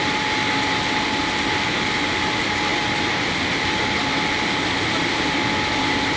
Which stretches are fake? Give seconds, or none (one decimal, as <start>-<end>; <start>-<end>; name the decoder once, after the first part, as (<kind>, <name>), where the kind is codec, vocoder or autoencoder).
none